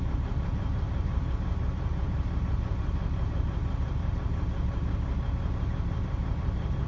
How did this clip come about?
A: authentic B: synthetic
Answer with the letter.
B